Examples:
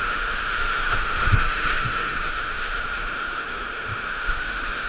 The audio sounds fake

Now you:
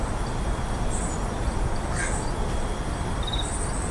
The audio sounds real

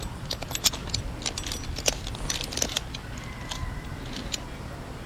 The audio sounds real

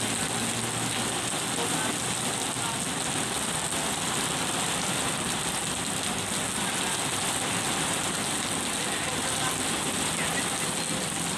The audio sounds real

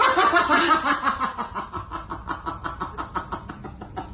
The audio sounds real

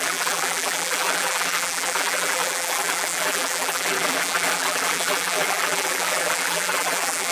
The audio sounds fake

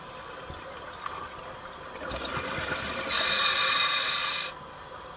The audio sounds real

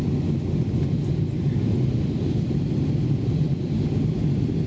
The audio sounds real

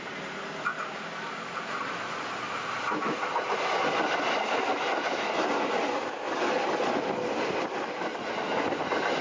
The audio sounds real